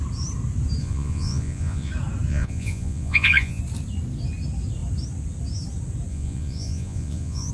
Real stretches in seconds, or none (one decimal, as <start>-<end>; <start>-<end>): 0.0-0.8; 1.9-2.3; 3.6-6.1